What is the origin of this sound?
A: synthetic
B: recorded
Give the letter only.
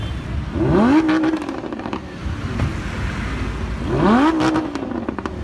B